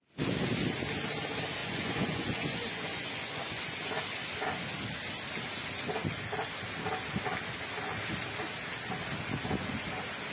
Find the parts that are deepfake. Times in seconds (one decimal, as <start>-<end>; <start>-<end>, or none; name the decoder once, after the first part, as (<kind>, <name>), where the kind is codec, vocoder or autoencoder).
1.6-4.0 (vocoder, Vocos)